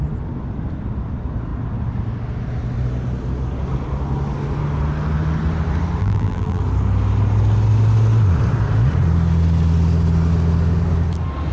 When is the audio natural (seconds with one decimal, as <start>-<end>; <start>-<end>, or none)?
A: 0.0-6.0; 6.6-11.5